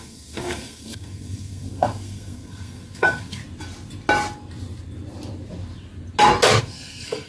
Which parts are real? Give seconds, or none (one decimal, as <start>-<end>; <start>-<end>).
3.4-6.6

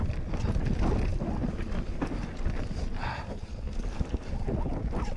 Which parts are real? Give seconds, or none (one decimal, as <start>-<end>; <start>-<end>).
0.0-5.2

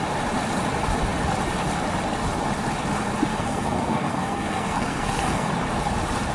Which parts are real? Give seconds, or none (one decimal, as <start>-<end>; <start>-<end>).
0.0-3.3; 5.5-6.3